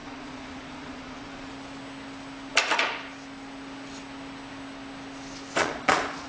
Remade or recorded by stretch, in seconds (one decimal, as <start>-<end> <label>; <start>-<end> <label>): 0.0-1.5 remade; 1.5-5.6 recorded; 5.6-6.3 remade